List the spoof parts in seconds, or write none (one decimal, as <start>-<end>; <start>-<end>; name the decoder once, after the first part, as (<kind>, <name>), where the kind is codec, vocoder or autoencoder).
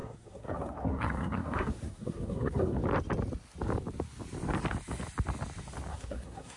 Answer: 0.0-2.8 (codec, SNAC); 5.9-6.6